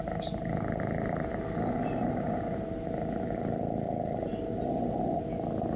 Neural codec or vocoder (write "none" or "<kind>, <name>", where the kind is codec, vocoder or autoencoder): none